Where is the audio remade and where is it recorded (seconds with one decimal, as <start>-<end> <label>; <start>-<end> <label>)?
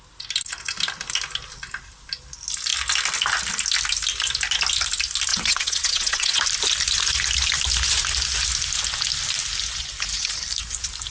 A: 0.0-5.3 recorded; 5.3-6.4 remade; 6.4-11.1 recorded